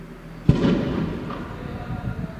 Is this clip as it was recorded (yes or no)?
yes